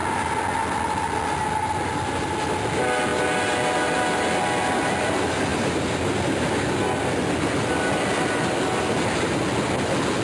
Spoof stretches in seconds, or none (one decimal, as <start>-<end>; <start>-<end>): none